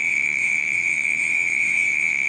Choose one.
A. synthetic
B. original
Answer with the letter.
A